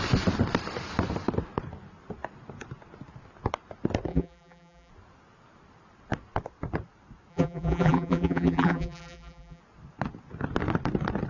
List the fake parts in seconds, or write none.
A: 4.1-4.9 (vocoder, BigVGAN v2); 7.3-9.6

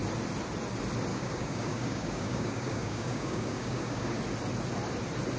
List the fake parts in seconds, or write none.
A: 1.1-4.1 (codec, DAC)